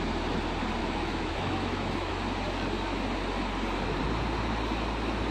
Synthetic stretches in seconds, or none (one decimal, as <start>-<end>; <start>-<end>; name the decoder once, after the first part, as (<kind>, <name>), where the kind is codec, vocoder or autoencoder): 0.8-2.1 (autoencoder, DAC-VAE)